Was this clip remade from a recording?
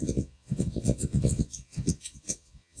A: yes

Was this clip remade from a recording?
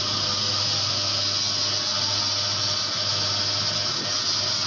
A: no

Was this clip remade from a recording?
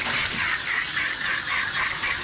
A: no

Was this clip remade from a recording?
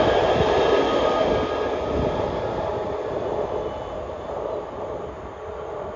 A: no